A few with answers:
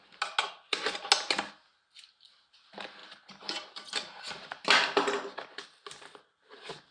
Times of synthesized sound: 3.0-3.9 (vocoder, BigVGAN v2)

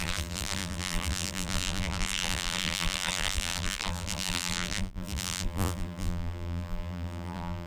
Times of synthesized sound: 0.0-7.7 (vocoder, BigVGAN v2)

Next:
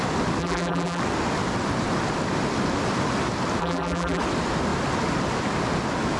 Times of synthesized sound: 0.4-1.0 (vocoder, BigVGAN v2); 3.6-4.2

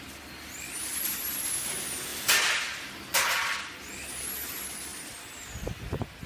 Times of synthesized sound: 2.1-3.0 (vocoder, BigVGAN v2)

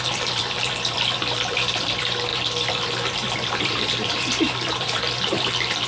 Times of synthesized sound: 0.0-5.9 (vocoder, BigVGAN v2)

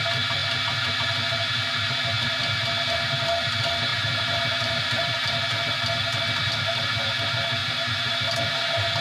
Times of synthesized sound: 3.9-5.3 (vocoder, BigVGAN v2); 7.6-8.1

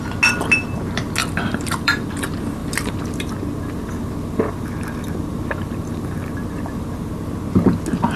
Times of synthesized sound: 1.2-2.1 (vocoder, BigVGAN v2); 2.6-7.1

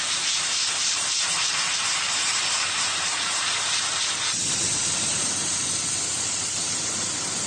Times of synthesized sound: 0.0-3.9 (vocoder, BigVGAN v2)